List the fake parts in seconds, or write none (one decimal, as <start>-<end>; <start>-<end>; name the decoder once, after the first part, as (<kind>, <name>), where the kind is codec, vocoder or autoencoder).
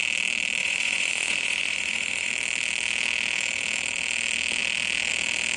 0.6-2.3 (vocoder, Vocos)